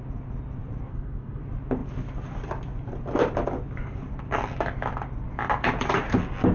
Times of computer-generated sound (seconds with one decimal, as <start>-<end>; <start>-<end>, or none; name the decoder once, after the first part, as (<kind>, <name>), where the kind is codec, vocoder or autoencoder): 0.9-1.4 (codec, SNAC)